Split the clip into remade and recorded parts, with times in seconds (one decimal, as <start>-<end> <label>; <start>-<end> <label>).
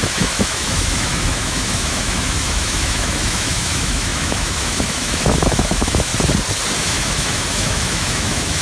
0.0-6.1 remade; 6.1-6.8 recorded; 6.8-8.6 remade